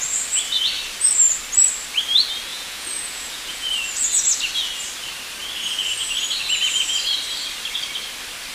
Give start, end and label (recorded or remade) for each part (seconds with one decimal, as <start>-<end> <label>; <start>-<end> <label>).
0.0-2.5 recorded; 2.5-3.7 remade; 3.7-8.5 recorded